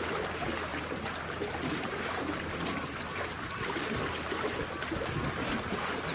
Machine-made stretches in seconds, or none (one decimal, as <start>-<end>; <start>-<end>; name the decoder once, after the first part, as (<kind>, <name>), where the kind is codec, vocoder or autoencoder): 0.7-4.3 (vocoder, BigVGAN v2)